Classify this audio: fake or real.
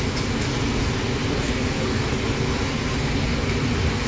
real